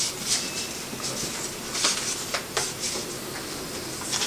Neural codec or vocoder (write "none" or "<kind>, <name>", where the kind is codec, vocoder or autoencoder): none